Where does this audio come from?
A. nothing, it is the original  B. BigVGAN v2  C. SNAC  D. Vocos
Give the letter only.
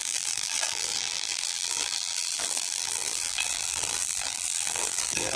B